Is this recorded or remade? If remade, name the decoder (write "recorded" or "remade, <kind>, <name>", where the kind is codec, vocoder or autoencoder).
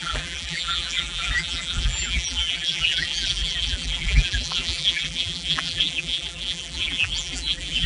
remade, vocoder, BigVGAN v2